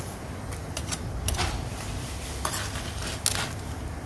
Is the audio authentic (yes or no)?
yes